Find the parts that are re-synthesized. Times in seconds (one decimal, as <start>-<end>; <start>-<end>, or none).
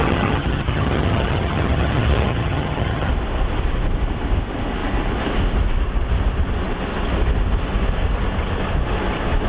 0.0-3.1